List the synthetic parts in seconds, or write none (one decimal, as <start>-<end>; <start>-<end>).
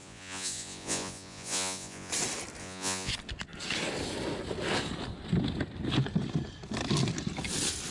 0.0-2.1; 2.6-3.1